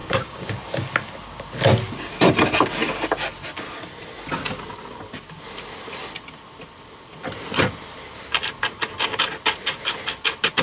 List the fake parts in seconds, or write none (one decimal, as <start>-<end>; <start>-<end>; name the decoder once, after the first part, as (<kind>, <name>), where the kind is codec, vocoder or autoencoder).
0.0-0.5 (codec, DAC)